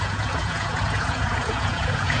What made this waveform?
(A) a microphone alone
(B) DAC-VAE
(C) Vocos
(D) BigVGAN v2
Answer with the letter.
C